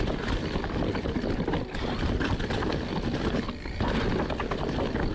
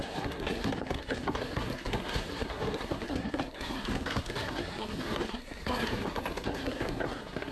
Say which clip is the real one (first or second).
first